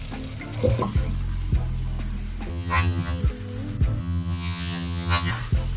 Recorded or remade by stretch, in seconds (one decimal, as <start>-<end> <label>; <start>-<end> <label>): 0.0-2.5 recorded; 2.5-3.2 remade; 3.2-4.0 recorded; 4.0-5.3 remade; 5.3-5.8 recorded